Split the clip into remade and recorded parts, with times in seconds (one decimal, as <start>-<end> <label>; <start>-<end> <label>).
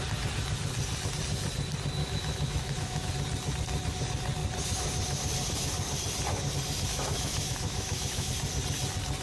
0.0-2.0 recorded; 2.0-3.1 remade; 3.1-6.9 recorded; 6.9-8.3 remade; 8.3-9.2 recorded